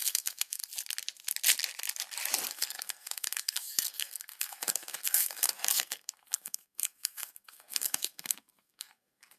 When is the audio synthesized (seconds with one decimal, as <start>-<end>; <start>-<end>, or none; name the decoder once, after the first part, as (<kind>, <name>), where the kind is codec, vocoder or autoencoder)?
0.0-0.6 (codec, SNAC); 2.5-9.4